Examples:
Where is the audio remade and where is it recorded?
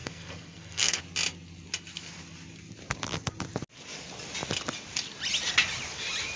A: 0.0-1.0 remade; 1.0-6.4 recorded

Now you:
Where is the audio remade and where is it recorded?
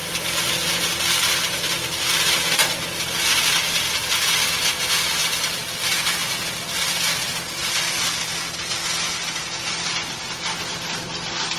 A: 0.0-4.0 recorded; 4.0-4.6 remade; 4.6-7.6 recorded; 7.6-8.2 remade; 8.2-11.6 recorded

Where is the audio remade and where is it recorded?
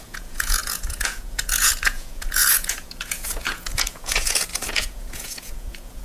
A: 0.0-6.0 remade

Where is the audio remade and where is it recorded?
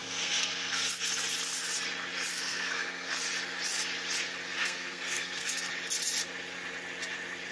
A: 0.0-1.1 remade; 1.1-2.3 recorded; 2.3-3.2 remade; 3.2-4.6 recorded; 4.6-5.7 remade; 5.7-7.5 recorded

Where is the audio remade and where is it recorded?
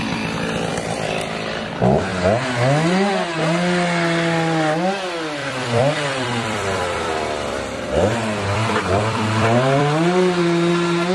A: 0.0-5.4 recorded; 5.4-10.7 remade; 10.7-11.1 recorded